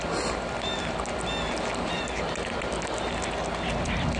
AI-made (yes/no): no